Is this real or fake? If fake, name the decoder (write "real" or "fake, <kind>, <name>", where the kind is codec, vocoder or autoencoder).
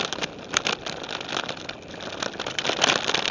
fake, vocoder, BigVGAN v2